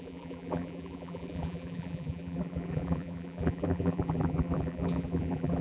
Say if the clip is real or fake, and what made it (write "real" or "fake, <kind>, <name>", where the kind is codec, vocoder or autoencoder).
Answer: fake, vocoder, BigVGAN v2